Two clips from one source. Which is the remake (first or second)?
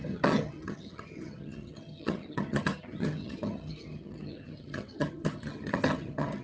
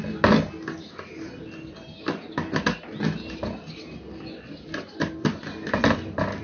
first